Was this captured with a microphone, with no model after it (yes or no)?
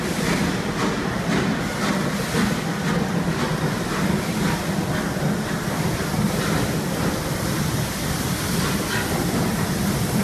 yes